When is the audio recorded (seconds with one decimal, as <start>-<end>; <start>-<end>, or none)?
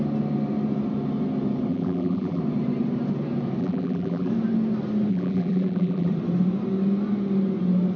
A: 0.0-1.7; 2.4-3.6; 4.3-5.1; 6.1-8.0